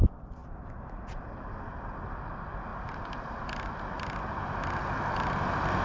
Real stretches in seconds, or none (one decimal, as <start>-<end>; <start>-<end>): 0.0-5.8